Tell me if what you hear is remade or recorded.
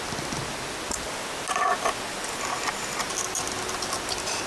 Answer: recorded